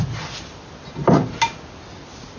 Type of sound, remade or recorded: recorded